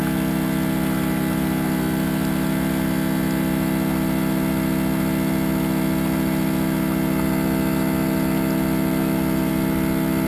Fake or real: real